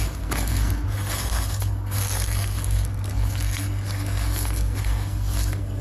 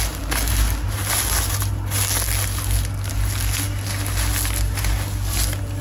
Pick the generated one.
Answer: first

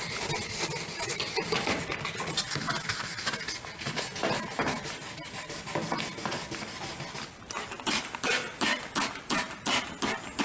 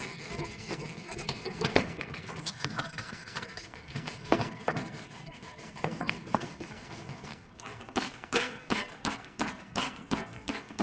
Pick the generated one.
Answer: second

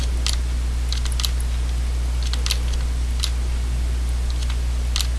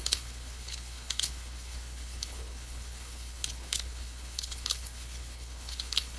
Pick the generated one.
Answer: second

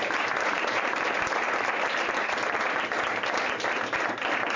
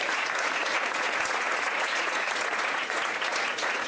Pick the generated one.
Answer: second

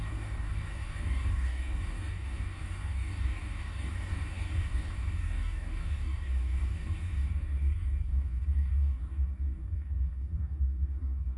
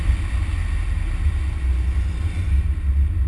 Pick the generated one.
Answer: first